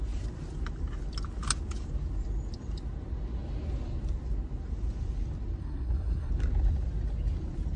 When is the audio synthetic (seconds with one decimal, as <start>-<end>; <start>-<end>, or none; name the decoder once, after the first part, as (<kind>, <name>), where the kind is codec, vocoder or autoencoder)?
5.6-6.3 (codec, SNAC)